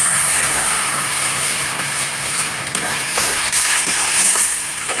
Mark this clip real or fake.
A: fake